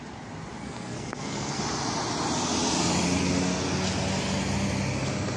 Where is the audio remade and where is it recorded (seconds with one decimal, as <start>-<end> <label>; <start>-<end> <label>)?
0.0-0.6 recorded; 0.6-1.6 remade; 1.6-5.4 recorded